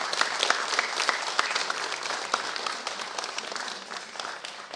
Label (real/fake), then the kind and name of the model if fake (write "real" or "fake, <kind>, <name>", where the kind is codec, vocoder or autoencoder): real